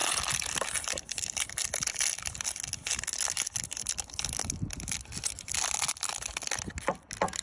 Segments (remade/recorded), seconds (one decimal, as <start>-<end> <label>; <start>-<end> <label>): 0.0-7.4 recorded